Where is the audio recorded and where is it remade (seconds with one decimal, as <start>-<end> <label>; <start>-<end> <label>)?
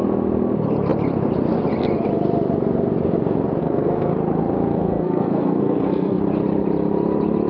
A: 0.0-3.6 recorded; 3.6-4.1 remade; 4.1-4.7 recorded; 4.7-6.2 remade; 6.2-7.5 recorded